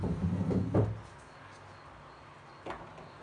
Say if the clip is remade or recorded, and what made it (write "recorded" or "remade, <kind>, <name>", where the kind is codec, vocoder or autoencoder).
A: recorded